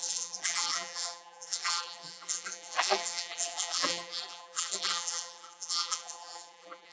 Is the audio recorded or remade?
remade